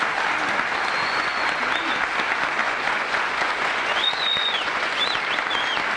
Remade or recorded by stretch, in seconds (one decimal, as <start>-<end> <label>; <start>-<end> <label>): 0.0-1.0 recorded; 1.0-1.6 remade; 1.6-2.6 recorded; 2.6-5.0 remade; 5.0-6.0 recorded